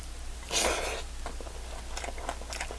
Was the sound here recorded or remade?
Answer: recorded